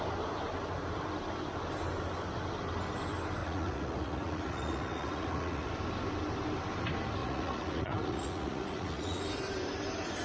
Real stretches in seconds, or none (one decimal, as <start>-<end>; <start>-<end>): 0.0-3.4; 5.7-7.2; 9.2-10.2